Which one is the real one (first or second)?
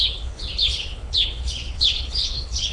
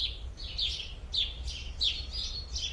second